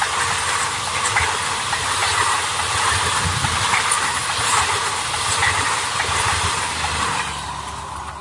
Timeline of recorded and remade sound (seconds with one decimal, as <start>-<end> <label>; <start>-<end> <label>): 0.0-8.2 recorded